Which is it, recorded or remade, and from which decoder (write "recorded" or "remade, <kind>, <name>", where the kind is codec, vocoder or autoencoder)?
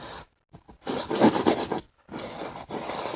recorded